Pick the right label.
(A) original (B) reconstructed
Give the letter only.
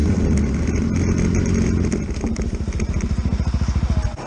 A